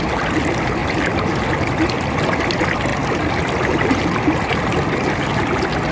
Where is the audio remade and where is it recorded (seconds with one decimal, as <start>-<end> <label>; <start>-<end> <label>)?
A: 0.0-5.9 recorded